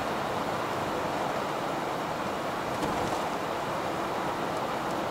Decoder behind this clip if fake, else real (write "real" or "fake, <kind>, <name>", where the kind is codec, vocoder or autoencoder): real